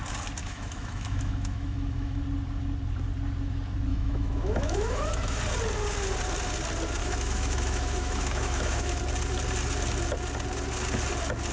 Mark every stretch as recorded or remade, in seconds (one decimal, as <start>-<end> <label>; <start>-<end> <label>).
0.0-0.4 recorded; 0.4-2.2 remade; 2.2-3.9 recorded; 3.9-5.4 remade; 5.4-7.0 recorded; 7.0-9.0 remade; 9.0-11.5 recorded